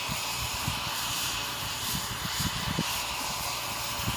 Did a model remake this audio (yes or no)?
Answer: yes